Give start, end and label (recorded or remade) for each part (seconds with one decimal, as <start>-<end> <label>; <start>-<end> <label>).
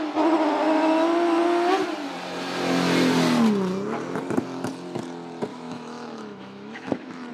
0.0-5.5 recorded; 5.5-7.3 remade